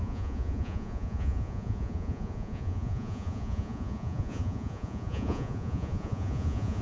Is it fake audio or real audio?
fake